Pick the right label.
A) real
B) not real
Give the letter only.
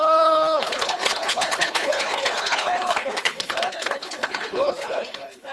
B